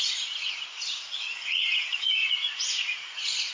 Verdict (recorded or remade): remade